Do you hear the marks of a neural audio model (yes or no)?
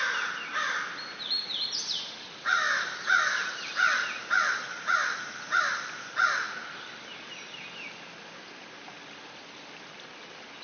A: no